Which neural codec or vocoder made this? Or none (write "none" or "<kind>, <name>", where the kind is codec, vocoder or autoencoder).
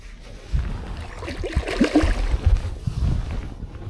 none